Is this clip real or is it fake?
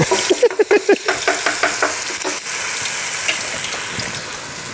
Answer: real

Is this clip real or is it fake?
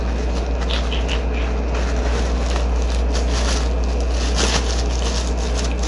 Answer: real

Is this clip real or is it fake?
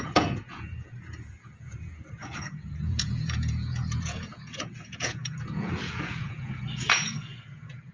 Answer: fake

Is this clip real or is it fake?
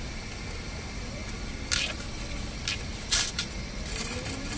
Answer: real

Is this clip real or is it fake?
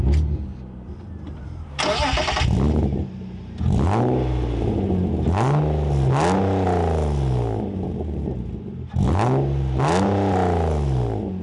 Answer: real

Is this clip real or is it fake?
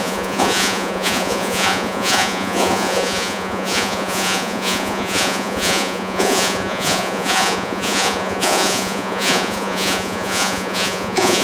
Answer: fake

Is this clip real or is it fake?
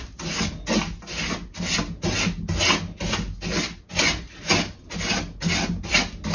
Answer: real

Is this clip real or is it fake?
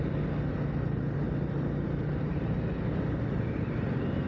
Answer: real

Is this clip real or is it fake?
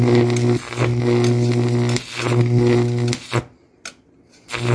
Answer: real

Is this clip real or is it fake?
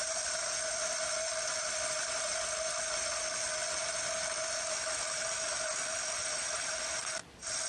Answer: real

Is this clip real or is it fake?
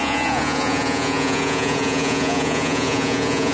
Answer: fake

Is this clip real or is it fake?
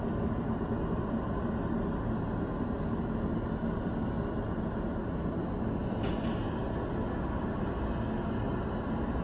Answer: real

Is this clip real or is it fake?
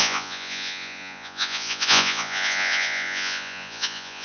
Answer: fake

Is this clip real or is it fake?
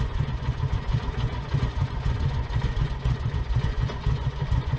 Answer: fake